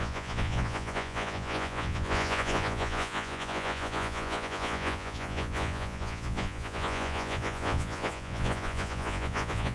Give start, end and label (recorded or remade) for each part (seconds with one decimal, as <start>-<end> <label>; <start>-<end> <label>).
0.0-9.7 remade